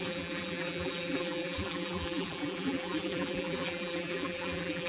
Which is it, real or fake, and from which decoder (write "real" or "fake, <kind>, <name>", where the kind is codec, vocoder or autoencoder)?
fake, vocoder, BigVGAN v2